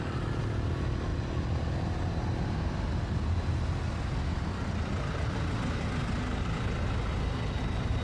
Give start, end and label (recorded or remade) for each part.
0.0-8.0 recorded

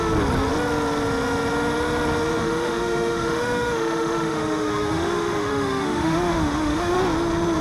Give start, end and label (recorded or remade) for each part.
0.0-2.4 recorded; 2.4-7.0 remade; 7.0-7.6 recorded

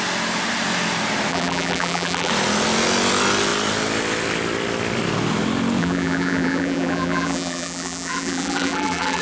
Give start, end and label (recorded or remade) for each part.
0.0-1.3 recorded; 1.3-2.3 remade; 2.3-5.8 recorded; 5.8-9.2 remade

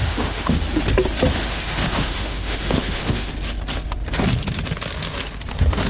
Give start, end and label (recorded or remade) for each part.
0.0-0.6 remade; 0.6-1.3 recorded; 1.3-3.3 remade; 3.3-5.9 recorded